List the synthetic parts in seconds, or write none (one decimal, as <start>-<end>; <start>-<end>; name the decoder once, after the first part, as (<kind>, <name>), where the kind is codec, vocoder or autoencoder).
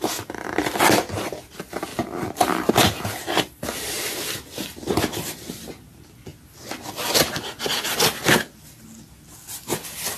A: 1.9-2.7 (vocoder, BigVGAN v2)